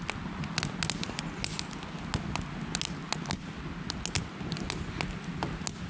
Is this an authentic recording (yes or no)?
yes